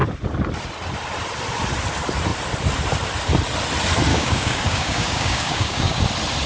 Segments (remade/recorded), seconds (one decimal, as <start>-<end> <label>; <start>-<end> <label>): 0.0-4.1 recorded; 4.1-6.0 remade; 6.0-6.5 recorded